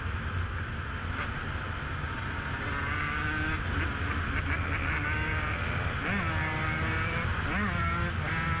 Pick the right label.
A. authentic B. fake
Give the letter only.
A